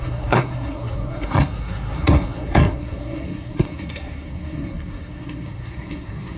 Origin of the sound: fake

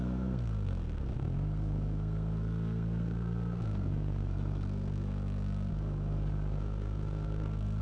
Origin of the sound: fake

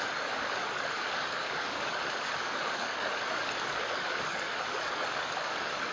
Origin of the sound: fake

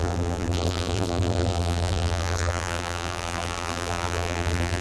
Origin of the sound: fake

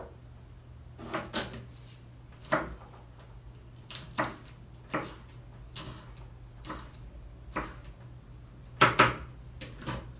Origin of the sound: real